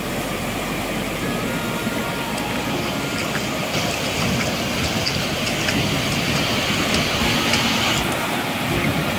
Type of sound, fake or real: real